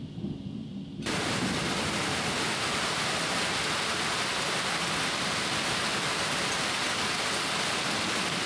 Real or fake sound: real